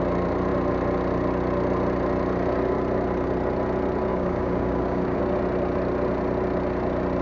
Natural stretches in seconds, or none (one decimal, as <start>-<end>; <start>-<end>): 0.0-4.1; 5.2-7.2

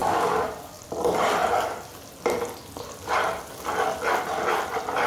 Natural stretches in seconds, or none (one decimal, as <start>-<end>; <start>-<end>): 0.8-5.1

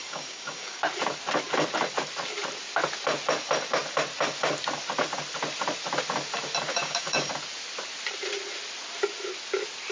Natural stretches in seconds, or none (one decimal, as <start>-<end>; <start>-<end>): 0.8-6.7; 7.3-9.9

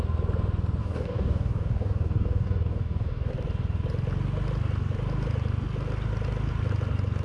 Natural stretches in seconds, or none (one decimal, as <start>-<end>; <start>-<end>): 0.0-0.8; 3.3-7.2

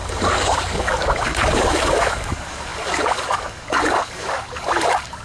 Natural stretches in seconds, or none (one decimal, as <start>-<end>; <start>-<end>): none